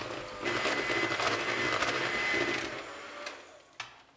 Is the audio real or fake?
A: real